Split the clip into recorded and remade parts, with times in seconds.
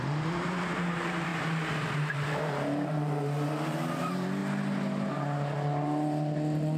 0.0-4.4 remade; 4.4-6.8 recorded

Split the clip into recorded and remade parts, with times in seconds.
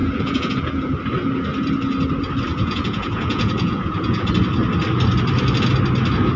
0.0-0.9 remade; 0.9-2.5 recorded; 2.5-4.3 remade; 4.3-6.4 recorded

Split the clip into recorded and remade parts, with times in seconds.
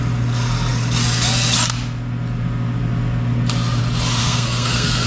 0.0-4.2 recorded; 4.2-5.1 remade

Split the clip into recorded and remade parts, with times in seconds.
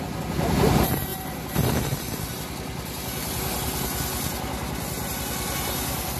0.0-1.1 recorded; 1.1-2.3 remade; 2.3-6.2 recorded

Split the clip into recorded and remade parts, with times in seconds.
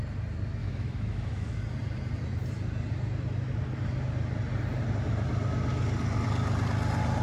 0.0-0.6 recorded; 0.6-1.6 remade; 1.6-7.2 recorded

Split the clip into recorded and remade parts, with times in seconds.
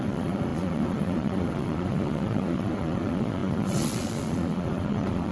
0.0-5.3 remade